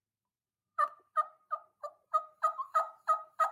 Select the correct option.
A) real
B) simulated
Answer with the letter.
B